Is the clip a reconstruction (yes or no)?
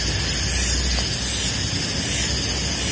no